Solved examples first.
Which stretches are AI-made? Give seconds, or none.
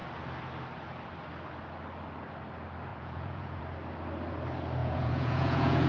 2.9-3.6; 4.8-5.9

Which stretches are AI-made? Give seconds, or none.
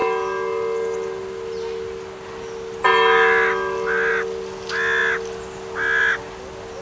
none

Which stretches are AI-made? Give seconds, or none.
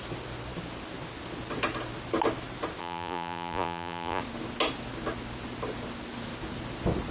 2.8-4.2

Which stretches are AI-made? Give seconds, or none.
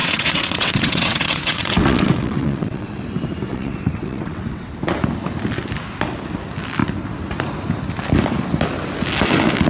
0.0-3.0; 3.5-4.7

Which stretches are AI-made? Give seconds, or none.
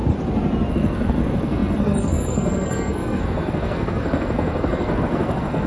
0.7-5.7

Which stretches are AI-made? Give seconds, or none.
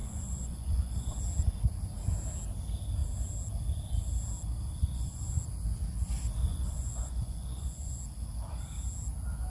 0.0-1.2; 4.8-5.4; 6.5-8.0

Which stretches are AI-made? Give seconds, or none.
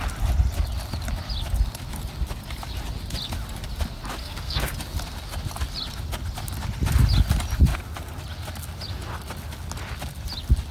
4.2-4.7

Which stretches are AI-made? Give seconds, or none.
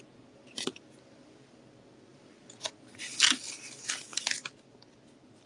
none